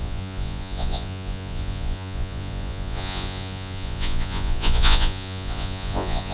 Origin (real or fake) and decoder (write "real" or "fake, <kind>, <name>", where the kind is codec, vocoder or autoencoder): fake, vocoder, Vocos